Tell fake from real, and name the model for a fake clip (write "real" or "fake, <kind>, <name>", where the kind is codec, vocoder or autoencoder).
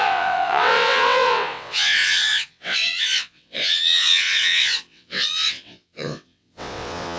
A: fake, vocoder, WaveNeXt